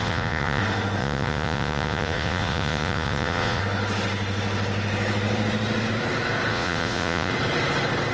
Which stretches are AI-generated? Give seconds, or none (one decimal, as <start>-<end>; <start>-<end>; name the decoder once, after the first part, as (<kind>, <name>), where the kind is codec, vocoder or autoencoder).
0.0-0.6 (vocoder, Vocos); 1.0-3.6; 6.5-7.3